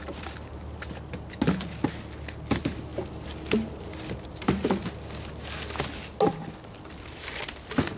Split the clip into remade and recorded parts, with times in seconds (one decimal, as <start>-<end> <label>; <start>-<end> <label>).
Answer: 0.0-2.9 recorded; 2.9-4.9 remade; 4.9-8.0 recorded